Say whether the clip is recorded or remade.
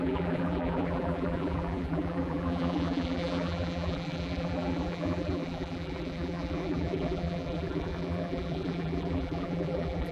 remade